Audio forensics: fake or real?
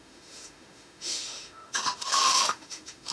fake